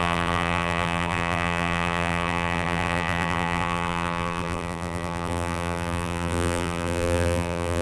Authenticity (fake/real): fake